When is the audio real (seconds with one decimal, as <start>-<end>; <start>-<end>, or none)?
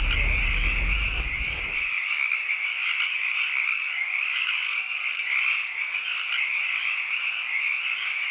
0.0-3.7; 5.2-8.3